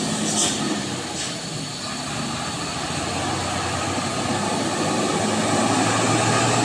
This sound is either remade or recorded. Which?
recorded